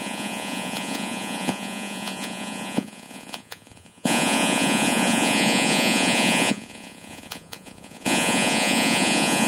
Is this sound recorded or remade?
remade